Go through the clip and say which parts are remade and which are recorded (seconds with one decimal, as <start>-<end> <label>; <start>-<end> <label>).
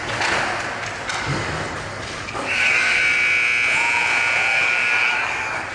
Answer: 0.0-1.3 recorded; 1.3-3.0 remade; 3.0-4.5 recorded; 4.5-5.7 remade